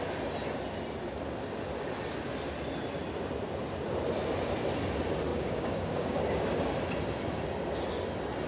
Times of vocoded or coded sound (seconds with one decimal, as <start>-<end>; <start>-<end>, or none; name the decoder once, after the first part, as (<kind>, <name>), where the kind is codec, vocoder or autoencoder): 5.3-6.5 (codec, DAC)